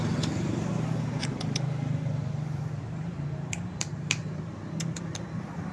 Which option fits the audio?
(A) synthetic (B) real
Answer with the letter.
A